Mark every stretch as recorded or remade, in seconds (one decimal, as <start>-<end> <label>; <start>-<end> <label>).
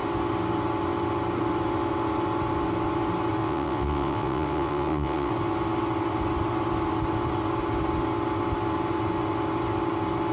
0.0-3.4 recorded; 3.4-5.3 remade; 5.3-10.3 recorded